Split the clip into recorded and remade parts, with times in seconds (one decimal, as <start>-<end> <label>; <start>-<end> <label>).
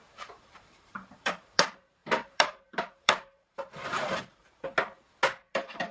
0.0-4.7 remade; 4.7-5.4 recorded; 5.4-5.9 remade